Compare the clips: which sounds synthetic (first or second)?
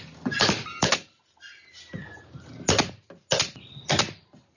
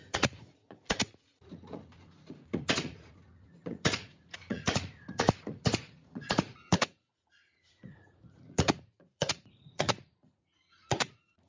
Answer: second